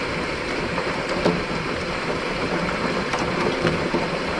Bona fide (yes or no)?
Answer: no